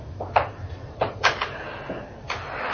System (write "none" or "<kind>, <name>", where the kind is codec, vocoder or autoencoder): none